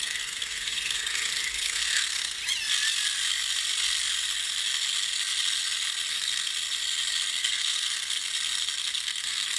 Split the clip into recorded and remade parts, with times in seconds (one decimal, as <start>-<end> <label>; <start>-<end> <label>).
0.0-2.4 remade; 2.4-6.1 recorded; 6.1-6.5 remade; 6.5-7.4 recorded; 7.4-8.3 remade; 8.3-8.8 recorded; 8.8-9.6 remade